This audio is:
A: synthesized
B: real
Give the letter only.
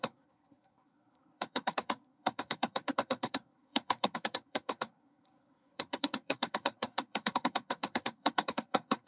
A